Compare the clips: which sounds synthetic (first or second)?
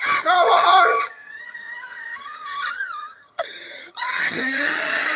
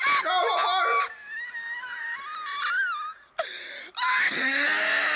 first